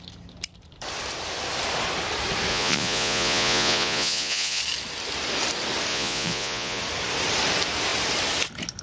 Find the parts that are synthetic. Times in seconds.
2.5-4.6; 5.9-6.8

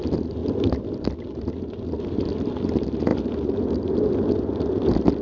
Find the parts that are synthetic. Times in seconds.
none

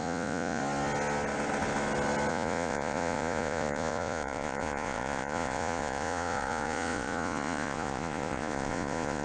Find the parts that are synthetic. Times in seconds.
0.0-0.6; 2.3-9.2

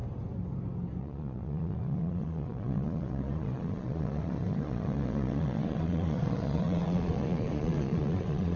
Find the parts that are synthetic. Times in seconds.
1.0-8.6

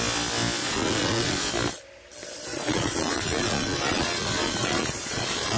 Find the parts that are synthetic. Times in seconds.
0.6-1.5; 2.5-5.6

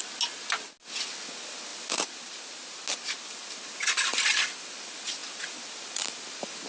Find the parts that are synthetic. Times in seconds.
none

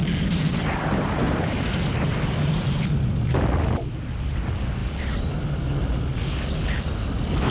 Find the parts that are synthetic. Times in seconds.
none